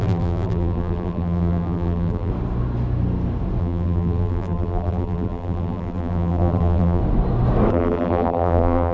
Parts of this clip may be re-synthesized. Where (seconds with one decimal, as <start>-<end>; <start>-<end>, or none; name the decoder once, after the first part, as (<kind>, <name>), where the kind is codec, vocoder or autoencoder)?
0.0-2.3 (vocoder, BigVGAN v2); 3.6-7.0; 7.7-8.9